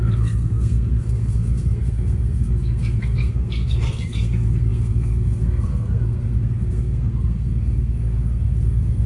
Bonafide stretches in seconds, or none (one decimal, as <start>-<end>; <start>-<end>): none